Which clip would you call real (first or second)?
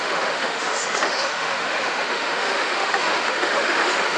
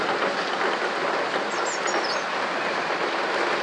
second